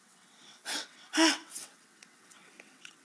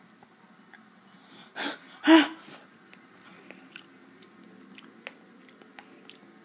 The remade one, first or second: first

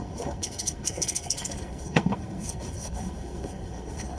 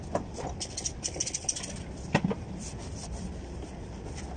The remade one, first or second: first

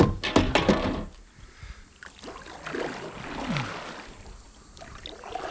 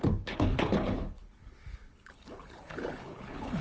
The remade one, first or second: second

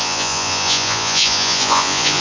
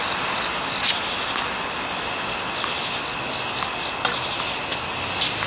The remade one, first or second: first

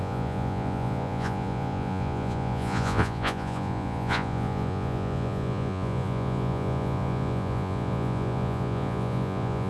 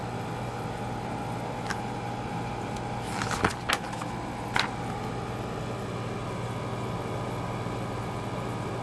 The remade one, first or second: first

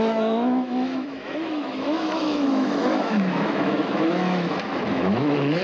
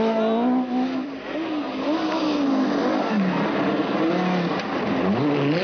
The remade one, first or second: first